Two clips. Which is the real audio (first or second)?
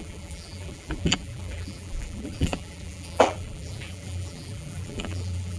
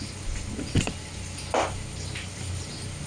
second